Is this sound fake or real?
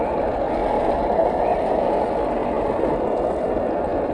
real